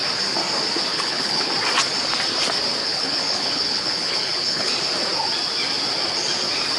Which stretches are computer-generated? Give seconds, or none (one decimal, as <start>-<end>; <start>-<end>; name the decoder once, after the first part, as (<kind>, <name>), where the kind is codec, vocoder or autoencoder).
0.9-1.5 (codec, HILCodec); 2.8-4.7